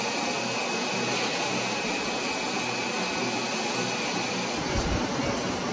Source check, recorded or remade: recorded